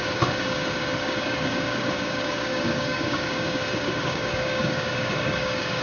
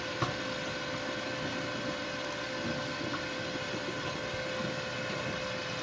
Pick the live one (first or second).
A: second